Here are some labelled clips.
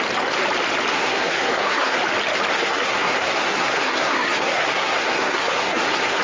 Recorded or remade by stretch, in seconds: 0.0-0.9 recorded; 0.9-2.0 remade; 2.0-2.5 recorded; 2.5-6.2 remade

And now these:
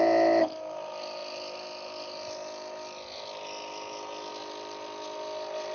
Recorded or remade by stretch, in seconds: 0.0-5.7 recorded

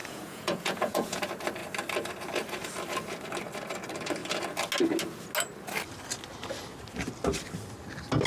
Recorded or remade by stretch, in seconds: 0.0-1.2 remade; 1.2-8.3 recorded

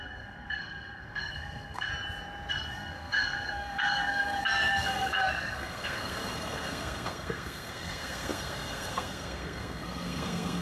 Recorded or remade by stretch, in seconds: 0.0-1.9 remade; 1.9-2.5 recorded; 2.5-10.6 remade

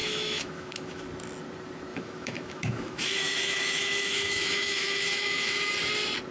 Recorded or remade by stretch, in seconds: 0.0-1.0 remade; 1.0-1.9 recorded; 1.9-5.7 remade; 5.7-6.3 recorded